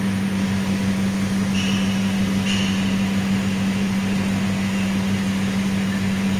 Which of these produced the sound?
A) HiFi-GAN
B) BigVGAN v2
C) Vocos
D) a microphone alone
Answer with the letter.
B